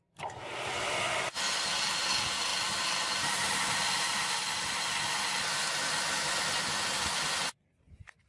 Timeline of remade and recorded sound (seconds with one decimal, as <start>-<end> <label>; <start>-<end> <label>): 0.0-2.5 recorded; 2.5-6.7 remade; 6.7-8.3 recorded